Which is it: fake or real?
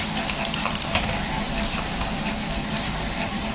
real